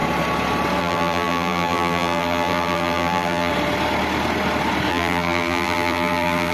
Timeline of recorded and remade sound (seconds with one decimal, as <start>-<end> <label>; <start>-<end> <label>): 0.0-0.8 recorded; 0.8-3.5 remade; 3.5-4.9 recorded; 4.9-6.5 remade